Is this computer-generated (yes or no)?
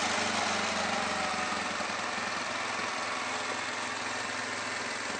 no